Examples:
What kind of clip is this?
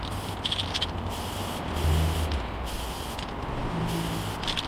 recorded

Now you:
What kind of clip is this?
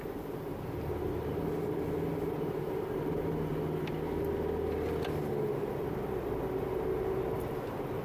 remade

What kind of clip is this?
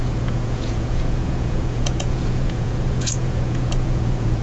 remade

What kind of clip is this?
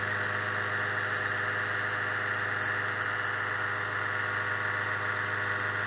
recorded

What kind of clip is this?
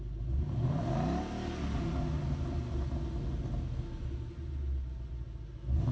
recorded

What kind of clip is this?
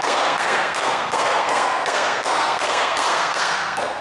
remade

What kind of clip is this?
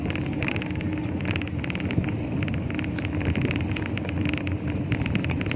recorded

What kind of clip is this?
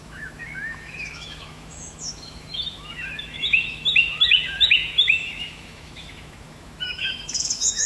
remade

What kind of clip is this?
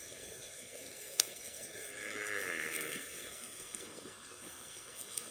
remade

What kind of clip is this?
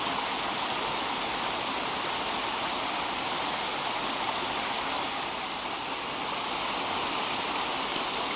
recorded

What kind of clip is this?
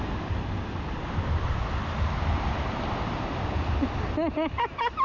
recorded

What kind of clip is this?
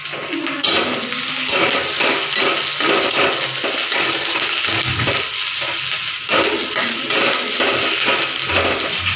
recorded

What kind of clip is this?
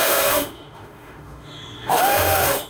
remade